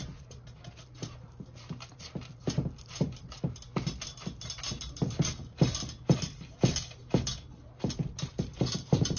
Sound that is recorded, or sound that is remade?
recorded